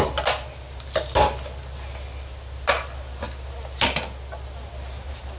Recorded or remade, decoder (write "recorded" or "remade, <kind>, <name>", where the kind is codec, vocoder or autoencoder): recorded